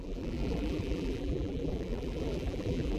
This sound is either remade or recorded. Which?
remade